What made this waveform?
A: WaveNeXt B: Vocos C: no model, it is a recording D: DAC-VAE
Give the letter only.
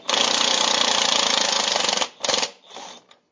C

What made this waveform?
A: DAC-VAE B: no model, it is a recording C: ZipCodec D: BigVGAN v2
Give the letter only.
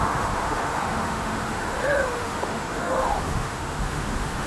A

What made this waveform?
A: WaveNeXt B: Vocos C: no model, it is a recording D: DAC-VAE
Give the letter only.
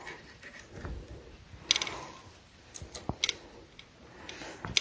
C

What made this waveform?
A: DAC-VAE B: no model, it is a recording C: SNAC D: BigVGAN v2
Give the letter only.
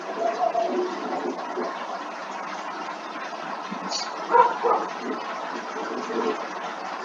B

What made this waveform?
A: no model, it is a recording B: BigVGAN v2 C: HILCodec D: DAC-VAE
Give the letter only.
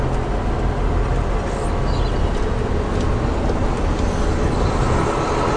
A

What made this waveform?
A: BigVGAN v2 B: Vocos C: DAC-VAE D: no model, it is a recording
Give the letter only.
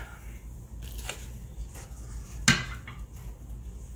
D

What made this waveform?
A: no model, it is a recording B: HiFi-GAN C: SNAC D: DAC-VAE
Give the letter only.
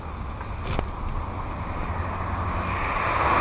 A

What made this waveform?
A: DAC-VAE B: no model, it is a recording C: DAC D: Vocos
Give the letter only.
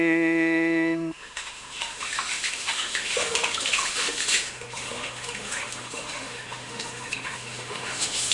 A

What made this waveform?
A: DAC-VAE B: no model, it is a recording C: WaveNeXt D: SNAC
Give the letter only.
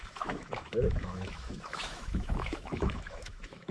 A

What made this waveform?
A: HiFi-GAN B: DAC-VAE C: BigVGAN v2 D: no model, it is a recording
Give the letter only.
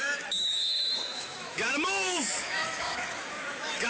B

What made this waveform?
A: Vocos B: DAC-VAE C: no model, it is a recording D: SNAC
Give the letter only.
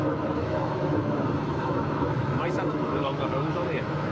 B